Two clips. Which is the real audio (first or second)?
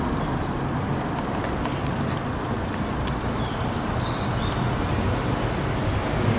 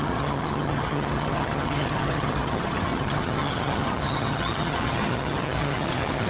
first